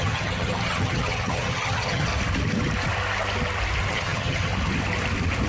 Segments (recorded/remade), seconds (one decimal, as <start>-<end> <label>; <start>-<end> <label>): 0.0-2.1 remade; 2.1-3.9 recorded; 3.9-4.5 remade; 4.5-5.5 recorded

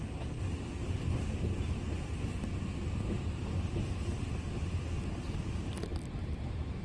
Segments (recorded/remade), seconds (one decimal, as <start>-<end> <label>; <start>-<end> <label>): 0.0-6.8 recorded

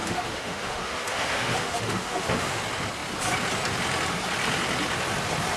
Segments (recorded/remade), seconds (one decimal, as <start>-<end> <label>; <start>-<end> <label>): 0.0-2.6 remade; 2.6-5.6 recorded

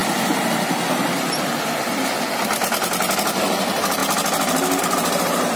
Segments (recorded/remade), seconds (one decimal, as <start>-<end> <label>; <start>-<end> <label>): 0.0-3.4 recorded; 3.4-4.0 remade; 4.0-4.8 recorded; 4.8-5.6 remade

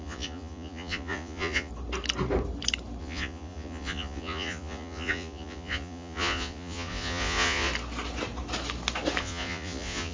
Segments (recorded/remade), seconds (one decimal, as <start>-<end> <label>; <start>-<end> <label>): 0.0-1.7 remade; 1.7-3.0 recorded; 3.0-7.7 remade; 7.7-9.2 recorded; 9.2-10.1 remade